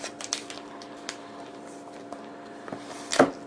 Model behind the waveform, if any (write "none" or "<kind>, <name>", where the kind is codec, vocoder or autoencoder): vocoder, BigVGAN v2